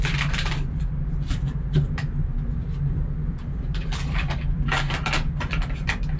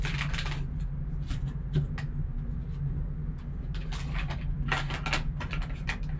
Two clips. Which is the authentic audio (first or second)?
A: second